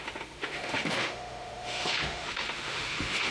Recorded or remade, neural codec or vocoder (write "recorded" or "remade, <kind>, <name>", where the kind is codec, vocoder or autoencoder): remade, autoencoder, DAC-VAE